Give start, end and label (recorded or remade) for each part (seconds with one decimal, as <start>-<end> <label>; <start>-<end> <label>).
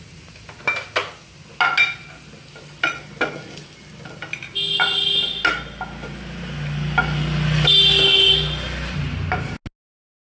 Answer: 0.0-10.3 recorded